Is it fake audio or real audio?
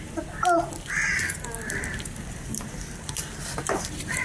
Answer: real